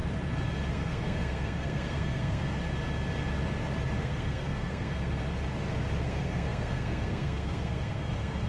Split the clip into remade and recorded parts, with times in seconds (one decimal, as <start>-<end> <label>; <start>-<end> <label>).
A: 0.0-0.7 recorded; 0.7-2.6 remade; 2.6-4.0 recorded; 4.0-5.2 remade; 5.2-6.0 recorded; 6.0-8.5 remade